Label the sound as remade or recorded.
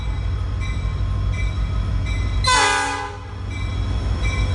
recorded